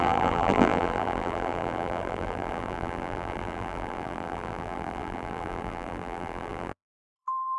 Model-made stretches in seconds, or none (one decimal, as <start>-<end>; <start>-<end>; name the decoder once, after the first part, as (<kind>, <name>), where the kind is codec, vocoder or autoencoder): 0.0-7.6 (vocoder, BigVGAN v2)